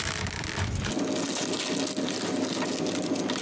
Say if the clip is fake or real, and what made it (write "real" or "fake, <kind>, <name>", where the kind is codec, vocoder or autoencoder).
real